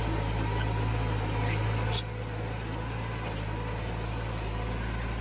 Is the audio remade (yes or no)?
no